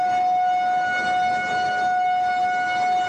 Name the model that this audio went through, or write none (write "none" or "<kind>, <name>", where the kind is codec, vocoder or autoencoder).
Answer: none